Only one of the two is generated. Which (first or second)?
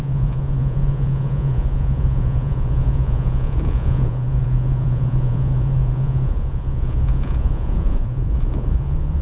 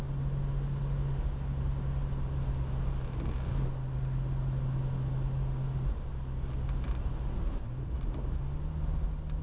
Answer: first